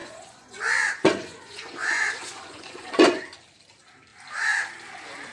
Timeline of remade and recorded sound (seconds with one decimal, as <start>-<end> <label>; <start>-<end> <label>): 0.0-3.2 remade; 3.2-5.3 recorded